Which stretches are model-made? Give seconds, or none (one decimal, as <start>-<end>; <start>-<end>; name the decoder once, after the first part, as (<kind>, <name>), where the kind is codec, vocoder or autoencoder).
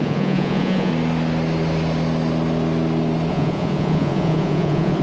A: 0.0-0.9 (vocoder, Vocos); 3.3-5.0